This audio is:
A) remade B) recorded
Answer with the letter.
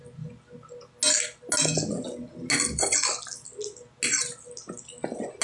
B